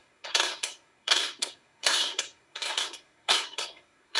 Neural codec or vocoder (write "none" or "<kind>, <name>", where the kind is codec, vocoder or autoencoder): codec, SNAC